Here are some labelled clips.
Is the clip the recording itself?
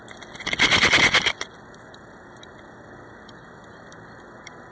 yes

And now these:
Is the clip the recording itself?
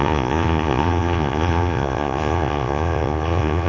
no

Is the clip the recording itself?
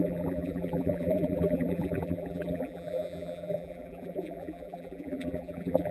no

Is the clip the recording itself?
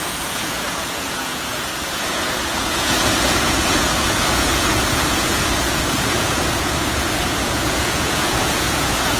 no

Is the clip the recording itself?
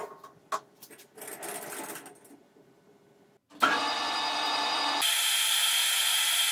yes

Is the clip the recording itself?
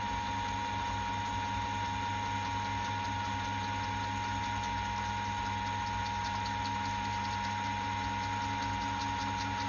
yes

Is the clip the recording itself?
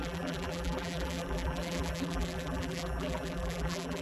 no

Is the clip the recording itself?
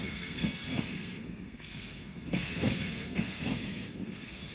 no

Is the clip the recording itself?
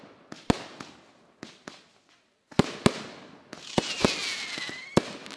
yes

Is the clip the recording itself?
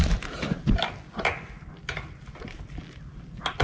yes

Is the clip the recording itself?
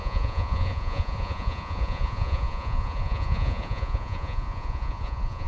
no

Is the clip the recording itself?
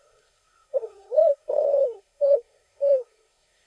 no